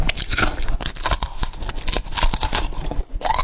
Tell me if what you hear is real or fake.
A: real